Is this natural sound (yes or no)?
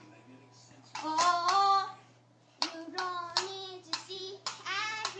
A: yes